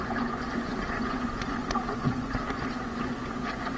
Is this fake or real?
fake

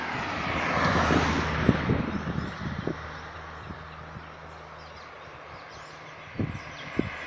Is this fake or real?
real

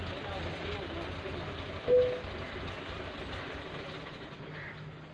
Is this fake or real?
real